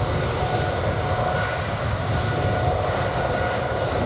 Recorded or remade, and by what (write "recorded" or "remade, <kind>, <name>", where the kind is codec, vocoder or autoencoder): recorded